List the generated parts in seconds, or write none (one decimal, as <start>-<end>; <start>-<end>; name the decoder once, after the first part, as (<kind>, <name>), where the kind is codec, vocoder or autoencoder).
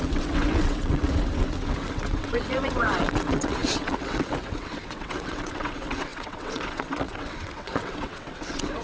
0.0-8.8 (vocoder, WaveNeXt)